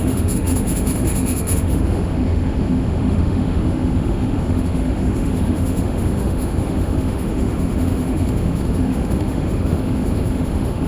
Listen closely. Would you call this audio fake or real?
fake